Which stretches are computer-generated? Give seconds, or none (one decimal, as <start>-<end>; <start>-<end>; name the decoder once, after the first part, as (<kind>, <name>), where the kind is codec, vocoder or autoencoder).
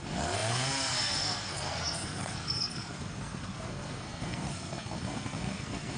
0.0-6.0 (codec, SNAC)